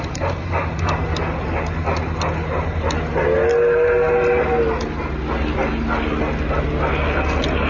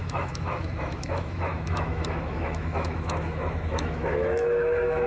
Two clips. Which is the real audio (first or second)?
first